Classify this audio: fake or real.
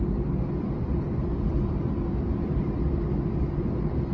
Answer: real